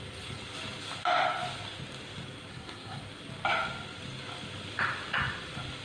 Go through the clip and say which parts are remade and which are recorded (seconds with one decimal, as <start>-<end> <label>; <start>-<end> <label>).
0.0-2.5 recorded; 2.5-3.0 remade; 3.0-5.8 recorded

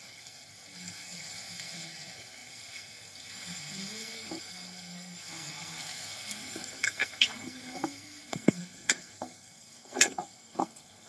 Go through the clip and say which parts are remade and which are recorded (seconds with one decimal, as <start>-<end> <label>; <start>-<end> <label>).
0.0-11.1 remade

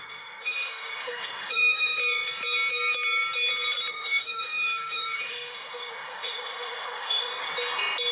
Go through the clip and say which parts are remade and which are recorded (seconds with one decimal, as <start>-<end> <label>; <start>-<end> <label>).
0.0-2.0 remade; 2.0-3.9 recorded; 3.9-7.3 remade; 7.3-8.1 recorded

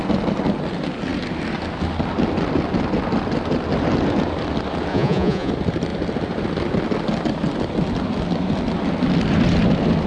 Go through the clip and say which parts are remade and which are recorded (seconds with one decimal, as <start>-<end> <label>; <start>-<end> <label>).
0.0-4.9 recorded; 4.9-5.5 remade; 5.5-10.1 recorded